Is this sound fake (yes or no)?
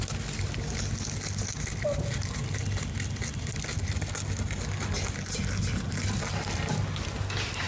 no